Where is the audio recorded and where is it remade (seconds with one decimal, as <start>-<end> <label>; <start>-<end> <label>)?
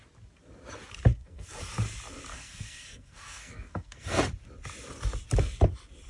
0.0-1.1 recorded; 1.1-1.6 remade; 1.6-2.3 recorded; 2.3-4.2 remade; 4.2-6.1 recorded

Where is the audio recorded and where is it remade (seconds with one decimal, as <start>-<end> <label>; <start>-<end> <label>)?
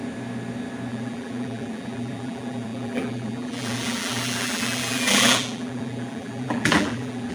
0.0-0.9 recorded; 0.9-7.3 remade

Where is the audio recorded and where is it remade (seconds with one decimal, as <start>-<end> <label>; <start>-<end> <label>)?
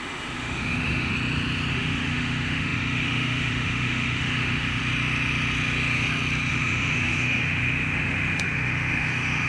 0.0-1.1 remade; 1.1-1.7 recorded; 1.7-4.8 remade; 4.8-6.5 recorded; 6.5-9.5 remade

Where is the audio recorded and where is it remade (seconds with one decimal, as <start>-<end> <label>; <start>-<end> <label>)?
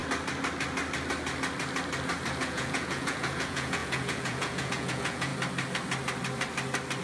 0.0-2.4 recorded; 2.4-5.3 remade; 5.3-7.0 recorded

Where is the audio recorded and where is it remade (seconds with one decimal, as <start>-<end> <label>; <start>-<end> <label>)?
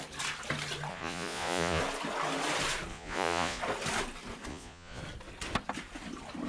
0.0-0.9 recorded; 0.9-1.8 remade; 1.8-2.9 recorded; 2.9-3.6 remade; 3.6-4.5 recorded; 4.5-5.0 remade; 5.0-6.5 recorded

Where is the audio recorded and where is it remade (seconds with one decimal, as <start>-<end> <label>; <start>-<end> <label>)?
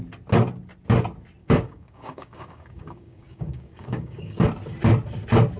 0.0-1.4 recorded; 1.4-4.5 remade; 4.5-5.6 recorded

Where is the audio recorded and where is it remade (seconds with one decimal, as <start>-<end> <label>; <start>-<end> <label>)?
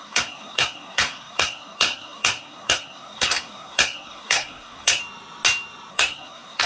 0.0-5.0 remade; 5.0-5.9 recorded; 5.9-6.7 remade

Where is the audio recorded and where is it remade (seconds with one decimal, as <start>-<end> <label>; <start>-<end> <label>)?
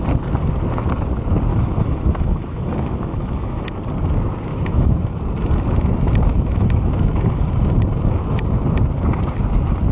0.0-1.5 recorded; 1.5-3.7 remade; 3.7-4.5 recorded; 4.5-5.2 remade; 5.2-6.3 recorded; 6.3-7.1 remade; 7.1-9.9 recorded